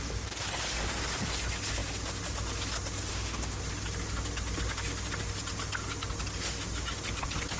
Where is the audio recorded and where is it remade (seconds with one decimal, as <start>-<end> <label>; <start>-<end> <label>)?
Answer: 0.0-3.1 recorded; 3.1-3.6 remade; 3.6-7.6 recorded

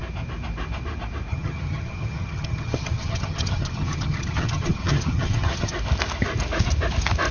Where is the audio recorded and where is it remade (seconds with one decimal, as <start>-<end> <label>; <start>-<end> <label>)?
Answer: 0.0-1.3 recorded; 1.3-5.7 remade; 5.7-7.3 recorded